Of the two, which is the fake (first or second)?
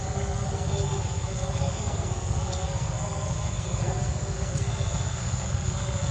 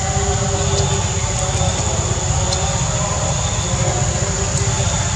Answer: first